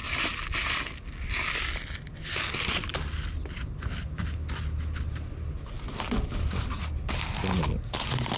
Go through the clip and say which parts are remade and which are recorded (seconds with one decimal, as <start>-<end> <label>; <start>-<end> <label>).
0.0-8.4 recorded